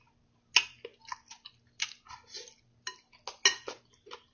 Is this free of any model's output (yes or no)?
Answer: yes